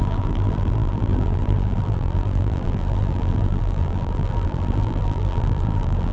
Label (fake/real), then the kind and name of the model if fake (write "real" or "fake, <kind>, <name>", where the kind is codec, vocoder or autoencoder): fake, vocoder, BigVGAN v2